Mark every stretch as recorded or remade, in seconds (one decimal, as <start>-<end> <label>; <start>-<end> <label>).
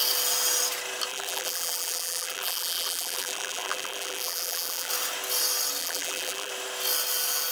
0.0-1.1 recorded; 1.1-4.9 remade; 4.9-5.8 recorded; 5.8-6.5 remade; 6.5-7.5 recorded